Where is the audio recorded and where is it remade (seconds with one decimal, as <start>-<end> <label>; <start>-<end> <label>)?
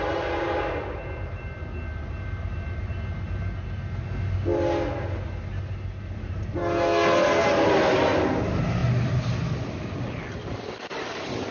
0.0-11.5 recorded